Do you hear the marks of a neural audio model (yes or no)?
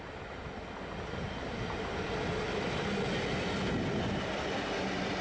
no